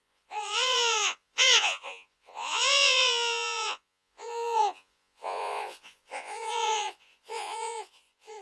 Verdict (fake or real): fake